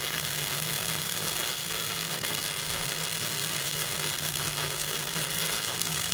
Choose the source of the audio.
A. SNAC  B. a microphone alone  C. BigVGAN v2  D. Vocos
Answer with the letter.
A